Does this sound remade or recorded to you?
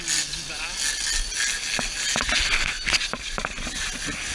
recorded